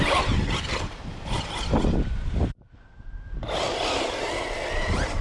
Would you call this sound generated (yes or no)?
no